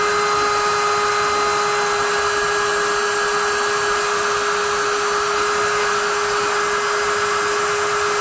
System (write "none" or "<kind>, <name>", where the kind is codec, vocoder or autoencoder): none